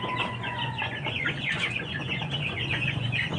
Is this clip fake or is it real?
fake